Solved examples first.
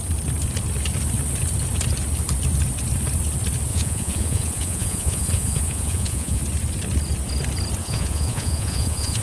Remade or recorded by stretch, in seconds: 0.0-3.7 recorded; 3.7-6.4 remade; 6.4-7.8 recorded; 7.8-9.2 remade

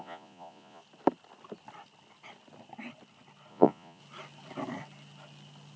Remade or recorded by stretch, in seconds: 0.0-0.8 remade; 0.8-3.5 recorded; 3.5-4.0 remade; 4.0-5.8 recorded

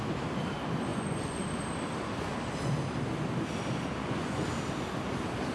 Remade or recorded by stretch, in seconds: 0.0-0.9 recorded; 0.9-1.4 remade; 1.4-4.0 recorded; 4.0-4.5 remade; 4.5-5.5 recorded